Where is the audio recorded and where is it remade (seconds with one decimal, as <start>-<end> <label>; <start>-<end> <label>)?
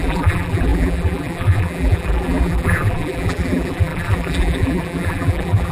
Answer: 0.0-5.7 remade